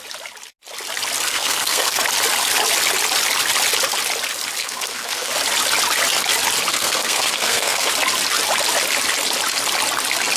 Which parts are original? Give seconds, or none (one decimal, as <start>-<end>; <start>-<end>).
0.0-1.3; 2.0-4.6; 5.3-6.7; 7.9-10.4